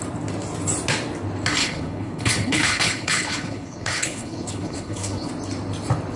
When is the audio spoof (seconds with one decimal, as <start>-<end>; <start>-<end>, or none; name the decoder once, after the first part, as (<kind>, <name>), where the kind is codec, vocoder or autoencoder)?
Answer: 1.6-5.3 (codec, HILCodec)